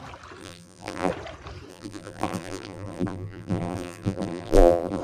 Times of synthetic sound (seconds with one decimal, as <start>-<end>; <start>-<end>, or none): 0.4-1.1; 1.7-5.0